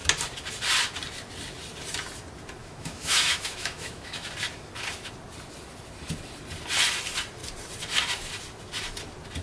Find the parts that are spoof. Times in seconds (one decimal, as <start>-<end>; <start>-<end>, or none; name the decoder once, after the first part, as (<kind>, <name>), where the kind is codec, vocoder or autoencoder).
2.6-4.3 (autoencoder, DAC-VAE)